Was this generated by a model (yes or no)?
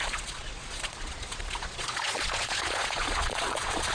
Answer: yes